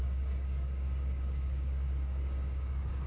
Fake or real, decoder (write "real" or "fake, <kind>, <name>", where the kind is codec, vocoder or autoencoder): fake, codec, DAC